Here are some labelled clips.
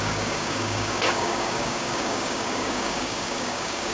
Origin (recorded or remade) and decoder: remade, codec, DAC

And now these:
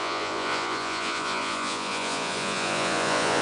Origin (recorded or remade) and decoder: remade, vocoder, Vocos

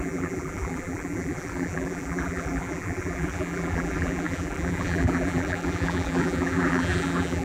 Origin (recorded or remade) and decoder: remade, vocoder, BigVGAN v2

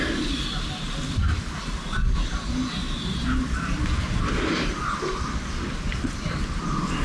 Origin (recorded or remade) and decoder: recorded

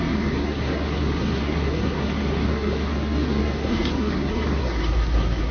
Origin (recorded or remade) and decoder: remade, codec, SNAC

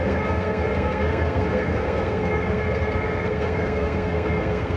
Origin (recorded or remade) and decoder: remade, codec, SNAC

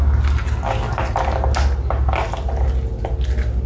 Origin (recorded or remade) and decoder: recorded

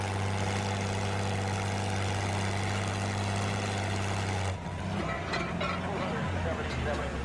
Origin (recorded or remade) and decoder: recorded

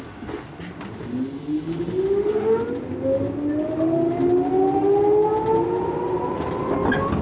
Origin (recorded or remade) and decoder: recorded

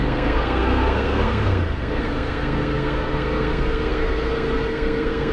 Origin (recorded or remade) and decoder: remade, codec, SNAC